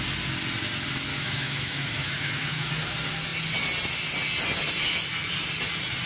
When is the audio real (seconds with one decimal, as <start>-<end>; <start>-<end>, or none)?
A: 0.0-1.1; 2.7-6.1